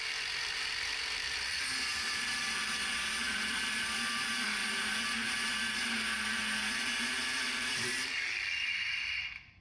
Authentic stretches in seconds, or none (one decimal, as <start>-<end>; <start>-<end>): 4.6-7.0